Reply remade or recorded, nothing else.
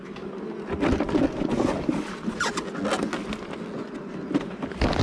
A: recorded